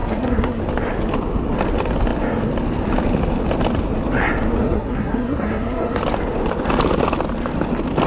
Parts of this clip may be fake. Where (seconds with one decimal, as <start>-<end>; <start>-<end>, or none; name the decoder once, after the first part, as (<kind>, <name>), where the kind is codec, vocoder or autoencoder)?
0.0-0.6 (codec, SNAC); 4.6-6.0